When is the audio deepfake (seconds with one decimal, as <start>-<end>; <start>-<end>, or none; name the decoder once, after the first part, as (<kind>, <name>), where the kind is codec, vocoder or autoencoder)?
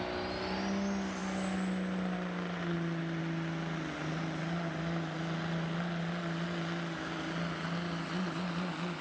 none